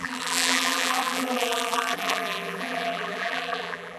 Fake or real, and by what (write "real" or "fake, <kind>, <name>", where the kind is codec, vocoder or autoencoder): fake, vocoder, BigVGAN v2